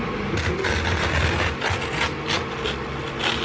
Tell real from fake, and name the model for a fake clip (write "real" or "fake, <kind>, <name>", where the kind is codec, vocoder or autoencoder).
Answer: real